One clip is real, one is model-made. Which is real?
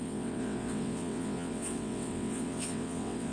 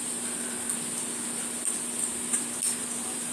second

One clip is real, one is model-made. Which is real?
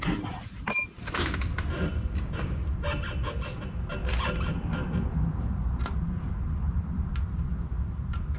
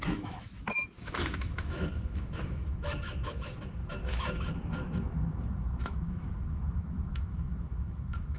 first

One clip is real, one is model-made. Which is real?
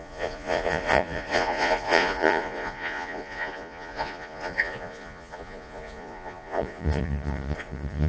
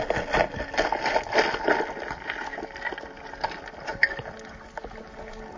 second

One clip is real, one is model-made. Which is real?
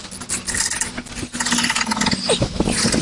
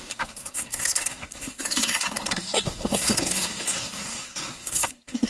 first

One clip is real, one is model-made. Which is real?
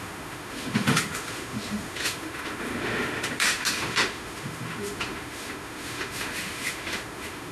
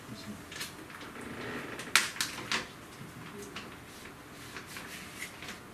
second